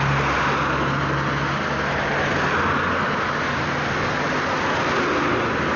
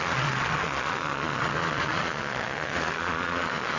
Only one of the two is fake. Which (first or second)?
second